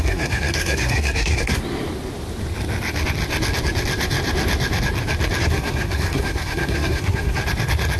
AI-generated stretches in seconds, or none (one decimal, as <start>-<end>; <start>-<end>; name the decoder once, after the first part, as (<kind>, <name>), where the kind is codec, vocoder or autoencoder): 0.0-1.6 (codec, SNAC); 5.4-7.4